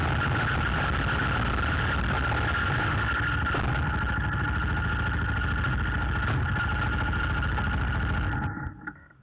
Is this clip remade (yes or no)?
no